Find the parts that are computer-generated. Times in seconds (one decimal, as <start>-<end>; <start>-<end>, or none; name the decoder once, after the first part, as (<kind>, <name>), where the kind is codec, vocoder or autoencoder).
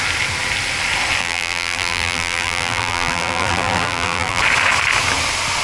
1.2-4.4 (vocoder, BigVGAN v2)